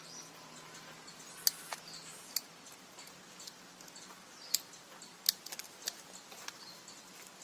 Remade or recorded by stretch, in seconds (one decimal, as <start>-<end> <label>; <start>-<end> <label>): 0.0-7.4 recorded